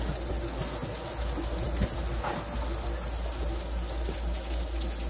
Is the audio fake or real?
real